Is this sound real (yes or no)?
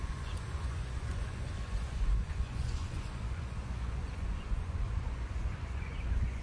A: no